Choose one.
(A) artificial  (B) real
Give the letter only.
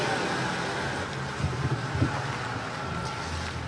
B